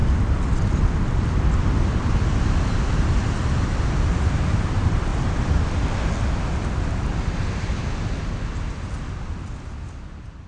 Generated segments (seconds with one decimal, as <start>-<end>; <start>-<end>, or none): none